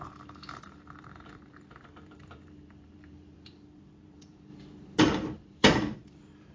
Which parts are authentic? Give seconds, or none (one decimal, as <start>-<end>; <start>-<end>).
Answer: 4.5-5.0